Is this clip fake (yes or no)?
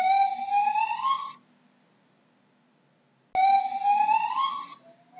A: no